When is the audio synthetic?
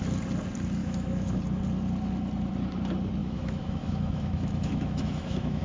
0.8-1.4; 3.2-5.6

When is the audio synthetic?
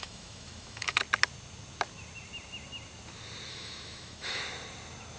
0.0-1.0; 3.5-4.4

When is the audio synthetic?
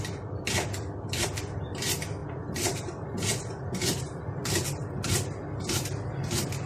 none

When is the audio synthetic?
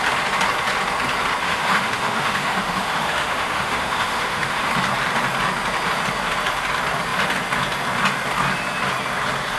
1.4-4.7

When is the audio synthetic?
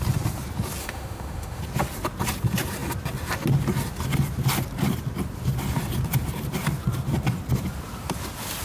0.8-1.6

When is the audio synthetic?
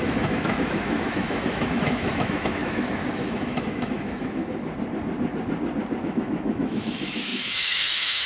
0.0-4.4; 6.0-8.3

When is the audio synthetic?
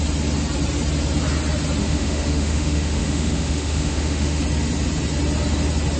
1.8-4.4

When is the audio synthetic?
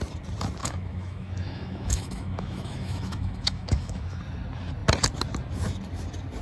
0.6-4.2